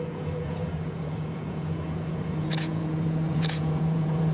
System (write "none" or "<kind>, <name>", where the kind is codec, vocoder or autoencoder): vocoder, Vocos